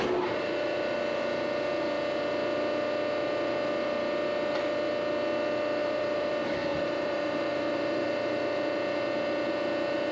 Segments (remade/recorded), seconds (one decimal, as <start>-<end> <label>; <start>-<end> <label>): 0.0-5.8 recorded; 5.8-6.3 remade; 6.3-6.7 recorded; 6.7-8.1 remade; 8.1-10.1 recorded